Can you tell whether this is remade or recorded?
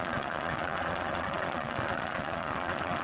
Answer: remade